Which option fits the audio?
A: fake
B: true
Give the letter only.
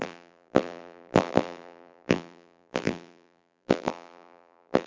A